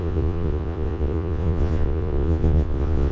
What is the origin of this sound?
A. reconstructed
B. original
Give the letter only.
A